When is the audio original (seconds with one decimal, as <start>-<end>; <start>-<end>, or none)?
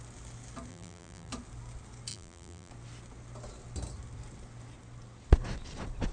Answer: 0.0-0.7; 1.3-2.1; 2.7-6.1